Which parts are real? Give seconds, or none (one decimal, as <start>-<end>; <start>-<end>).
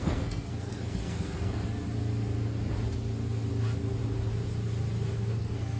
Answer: 1.6-5.1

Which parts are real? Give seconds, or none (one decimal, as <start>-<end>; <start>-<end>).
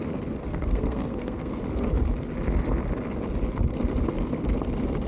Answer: 0.0-0.4; 1.6-5.1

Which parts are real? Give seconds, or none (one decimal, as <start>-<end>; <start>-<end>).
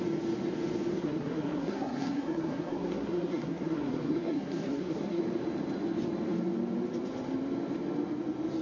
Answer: 0.0-0.9; 5.2-8.6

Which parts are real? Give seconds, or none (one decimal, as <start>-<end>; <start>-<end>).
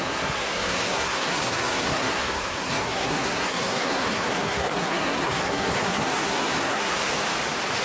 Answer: 7.1-7.8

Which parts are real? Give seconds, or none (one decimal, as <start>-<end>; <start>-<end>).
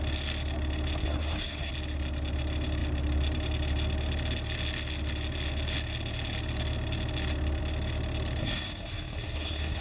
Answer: 0.0-1.0; 1.7-8.4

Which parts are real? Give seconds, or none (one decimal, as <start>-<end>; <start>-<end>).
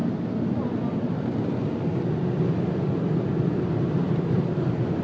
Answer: 0.0-5.0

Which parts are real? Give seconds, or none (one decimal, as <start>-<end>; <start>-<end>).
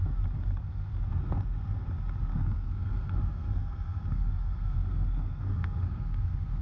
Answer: 0.0-1.1; 1.8-2.3